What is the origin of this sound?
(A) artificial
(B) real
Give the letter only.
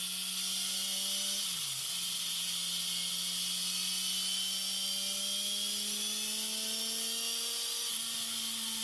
B